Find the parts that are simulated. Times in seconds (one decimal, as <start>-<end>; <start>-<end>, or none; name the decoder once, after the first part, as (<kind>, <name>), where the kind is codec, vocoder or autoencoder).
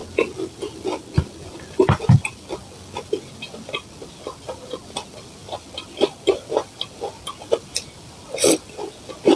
none